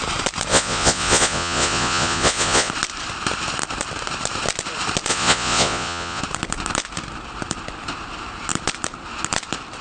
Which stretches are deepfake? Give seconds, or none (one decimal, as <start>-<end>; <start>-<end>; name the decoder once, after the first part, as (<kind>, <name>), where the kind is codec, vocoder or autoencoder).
0.5-2.7 (vocoder, Vocos); 5.1-6.2